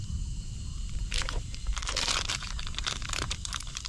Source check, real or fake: fake